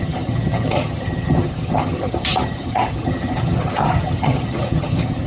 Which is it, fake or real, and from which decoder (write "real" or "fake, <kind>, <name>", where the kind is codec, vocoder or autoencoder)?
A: fake, vocoder, HiFi-GAN